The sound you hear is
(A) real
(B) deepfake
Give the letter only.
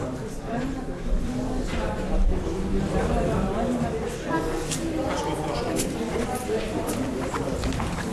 A